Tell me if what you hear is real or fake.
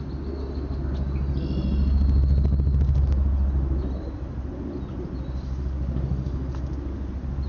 real